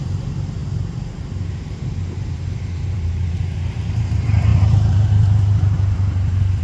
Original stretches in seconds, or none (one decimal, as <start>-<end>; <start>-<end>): 4.5-6.6